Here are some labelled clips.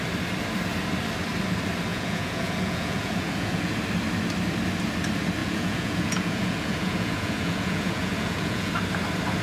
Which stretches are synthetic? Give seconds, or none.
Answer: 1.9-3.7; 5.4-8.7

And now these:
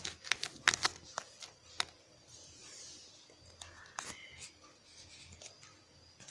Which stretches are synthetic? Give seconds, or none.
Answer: none